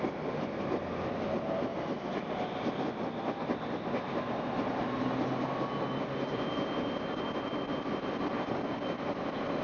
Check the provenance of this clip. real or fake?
real